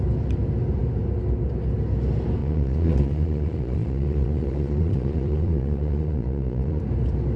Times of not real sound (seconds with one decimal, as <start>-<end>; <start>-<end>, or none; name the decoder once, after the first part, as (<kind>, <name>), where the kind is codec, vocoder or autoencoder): 2.4-6.8 (vocoder, Vocos)